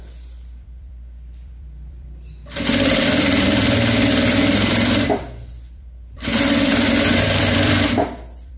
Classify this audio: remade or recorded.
remade